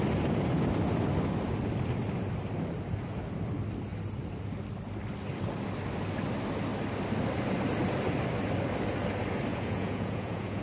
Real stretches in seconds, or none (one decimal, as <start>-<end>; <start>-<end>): 0.0-9.5